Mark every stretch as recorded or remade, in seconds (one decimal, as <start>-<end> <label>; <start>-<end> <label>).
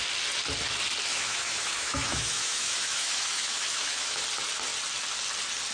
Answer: 0.0-1.1 recorded; 1.1-4.2 remade; 4.2-5.7 recorded